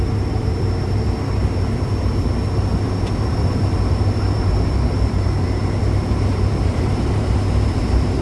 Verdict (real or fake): fake